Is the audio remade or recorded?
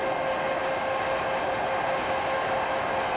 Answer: recorded